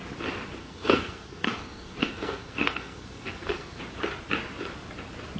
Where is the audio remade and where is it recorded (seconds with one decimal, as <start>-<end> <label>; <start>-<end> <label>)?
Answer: 0.0-0.6 recorded; 0.6-3.8 remade; 3.8-5.4 recorded